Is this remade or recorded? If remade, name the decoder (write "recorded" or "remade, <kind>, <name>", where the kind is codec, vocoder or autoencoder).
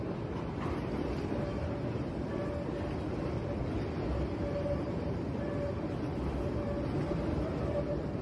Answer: recorded